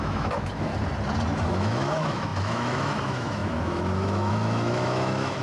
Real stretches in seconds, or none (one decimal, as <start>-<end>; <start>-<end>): 0.7-1.5